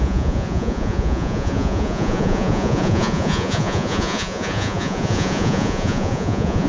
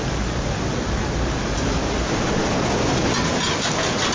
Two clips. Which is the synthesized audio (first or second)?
first